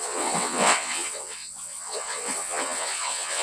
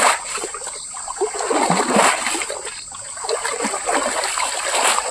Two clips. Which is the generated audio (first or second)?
first